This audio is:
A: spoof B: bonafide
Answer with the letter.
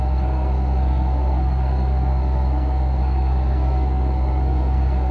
A